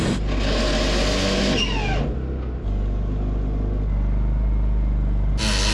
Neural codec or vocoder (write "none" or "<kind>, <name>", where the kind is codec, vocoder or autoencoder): none